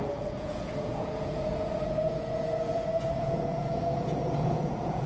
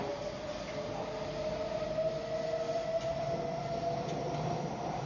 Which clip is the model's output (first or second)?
first